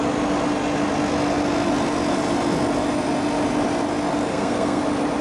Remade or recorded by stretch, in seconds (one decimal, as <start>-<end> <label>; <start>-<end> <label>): 0.0-4.3 recorded; 4.3-4.8 remade; 4.8-5.2 recorded